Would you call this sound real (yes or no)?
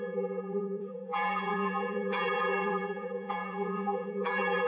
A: no